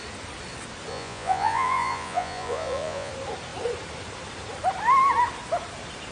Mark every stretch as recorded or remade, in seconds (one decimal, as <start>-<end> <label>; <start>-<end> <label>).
0.0-0.9 recorded; 0.9-3.1 remade; 3.1-6.1 recorded